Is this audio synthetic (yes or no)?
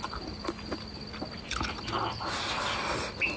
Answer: no